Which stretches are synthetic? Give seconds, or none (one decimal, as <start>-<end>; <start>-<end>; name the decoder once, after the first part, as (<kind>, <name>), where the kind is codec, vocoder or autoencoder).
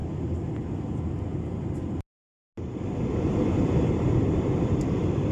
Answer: none